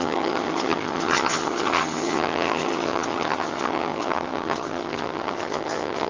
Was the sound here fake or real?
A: fake